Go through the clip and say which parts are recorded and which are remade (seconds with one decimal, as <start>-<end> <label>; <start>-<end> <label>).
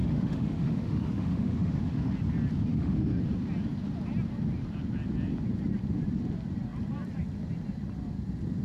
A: 0.0-2.1 remade; 2.1-2.7 recorded; 2.7-3.2 remade; 3.2-8.6 recorded